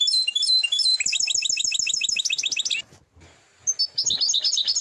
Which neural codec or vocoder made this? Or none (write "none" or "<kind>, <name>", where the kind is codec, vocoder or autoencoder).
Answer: none